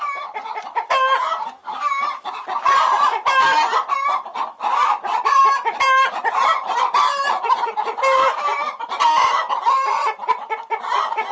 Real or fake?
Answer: fake